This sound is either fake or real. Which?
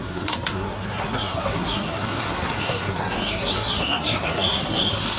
fake